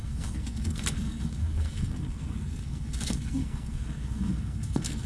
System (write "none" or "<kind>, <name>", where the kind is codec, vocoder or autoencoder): codec, SNAC